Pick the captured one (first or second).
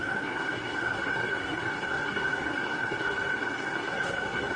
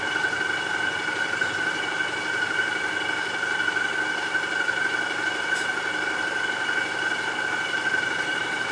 second